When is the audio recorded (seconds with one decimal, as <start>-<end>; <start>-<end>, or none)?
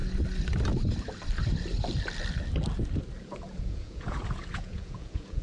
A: 0.0-3.2